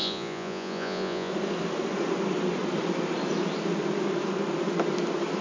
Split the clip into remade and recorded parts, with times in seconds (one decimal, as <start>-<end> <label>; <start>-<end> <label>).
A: 0.0-1.3 remade; 1.3-5.4 recorded